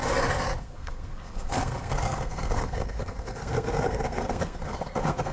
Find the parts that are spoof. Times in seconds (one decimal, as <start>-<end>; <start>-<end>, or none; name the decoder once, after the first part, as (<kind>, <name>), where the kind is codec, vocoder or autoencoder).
0.6-5.3 (codec, SNAC)